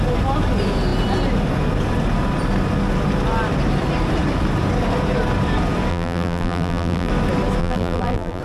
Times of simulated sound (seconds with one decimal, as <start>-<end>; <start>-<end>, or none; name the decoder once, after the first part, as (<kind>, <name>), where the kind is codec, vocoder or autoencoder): 5.9-7.1 (vocoder, BigVGAN v2); 7.6-8.4